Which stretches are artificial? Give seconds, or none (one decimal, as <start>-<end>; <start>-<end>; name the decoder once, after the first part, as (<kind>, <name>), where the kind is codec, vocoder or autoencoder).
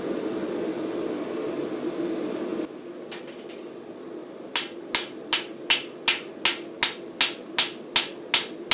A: none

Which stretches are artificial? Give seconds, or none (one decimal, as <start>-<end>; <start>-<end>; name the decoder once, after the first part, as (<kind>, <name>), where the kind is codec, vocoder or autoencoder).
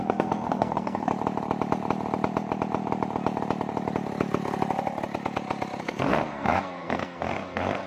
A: 0.0-1.1 (codec, SNAC); 5.8-7.9